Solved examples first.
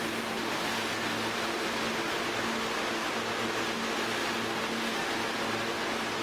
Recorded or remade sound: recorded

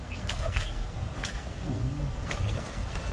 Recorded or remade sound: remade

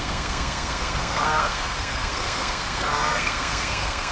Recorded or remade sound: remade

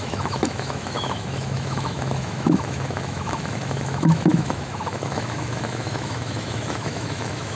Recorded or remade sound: remade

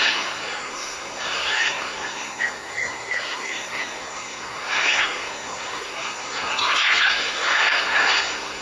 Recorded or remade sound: remade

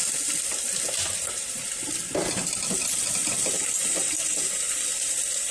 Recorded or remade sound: recorded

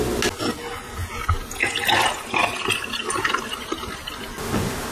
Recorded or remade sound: recorded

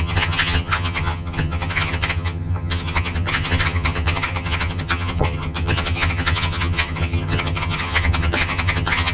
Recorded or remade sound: remade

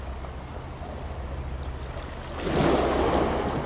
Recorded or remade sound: recorded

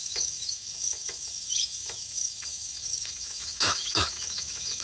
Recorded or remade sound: remade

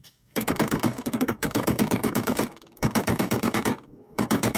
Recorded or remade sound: remade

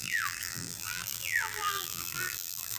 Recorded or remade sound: remade